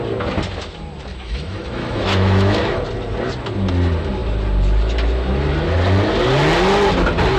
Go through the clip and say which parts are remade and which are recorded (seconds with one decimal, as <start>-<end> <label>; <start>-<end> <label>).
0.0-1.1 recorded; 1.1-2.8 remade; 2.8-7.4 recorded